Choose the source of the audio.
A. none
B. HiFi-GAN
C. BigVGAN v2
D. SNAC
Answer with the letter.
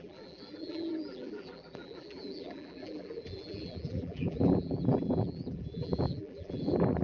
C